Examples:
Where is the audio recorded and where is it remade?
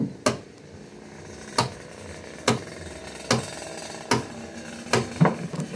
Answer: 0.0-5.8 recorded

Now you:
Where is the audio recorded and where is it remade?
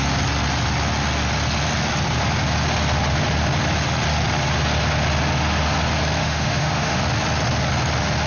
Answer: 0.0-6.2 recorded; 6.2-7.0 remade; 7.0-8.3 recorded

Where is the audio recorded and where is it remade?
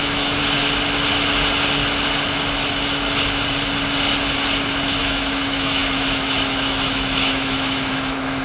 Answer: 0.0-0.4 remade; 0.4-5.0 recorded; 5.0-8.4 remade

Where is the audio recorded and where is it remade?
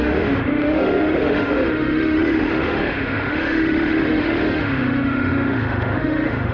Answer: 0.0-6.5 remade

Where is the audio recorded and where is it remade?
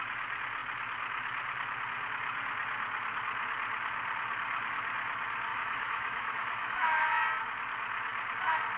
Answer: 0.0-5.5 recorded; 5.5-7.0 remade; 7.0-8.8 recorded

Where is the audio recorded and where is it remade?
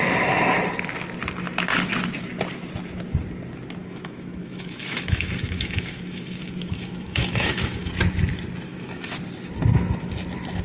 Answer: 0.0-3.8 recorded; 3.8-7.9 remade; 7.9-8.7 recorded; 8.7-9.2 remade; 9.2-10.6 recorded